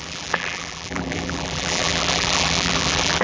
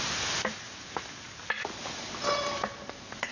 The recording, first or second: second